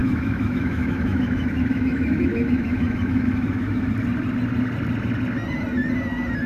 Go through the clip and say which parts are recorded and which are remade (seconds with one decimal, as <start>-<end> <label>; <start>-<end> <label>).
0.0-3.9 remade; 3.9-6.5 recorded